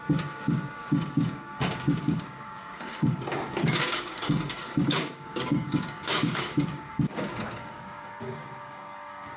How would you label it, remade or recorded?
remade